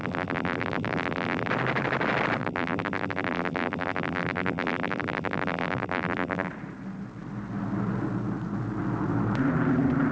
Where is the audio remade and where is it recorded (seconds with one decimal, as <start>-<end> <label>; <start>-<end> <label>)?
0.0-1.5 remade; 1.5-2.4 recorded; 2.4-6.5 remade; 6.5-10.1 recorded